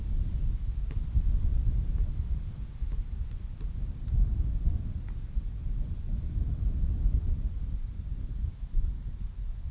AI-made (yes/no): no